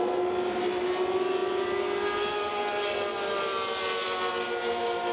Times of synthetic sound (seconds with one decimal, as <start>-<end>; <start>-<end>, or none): none